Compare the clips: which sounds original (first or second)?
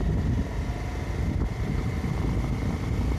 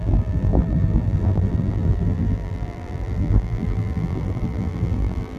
first